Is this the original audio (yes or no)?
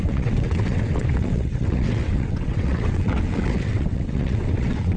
no